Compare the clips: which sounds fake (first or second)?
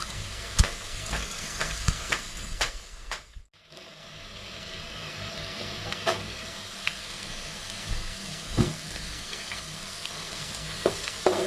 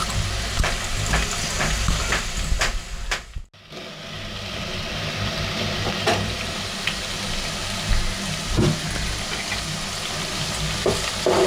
first